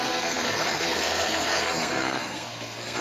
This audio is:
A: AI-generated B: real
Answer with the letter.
A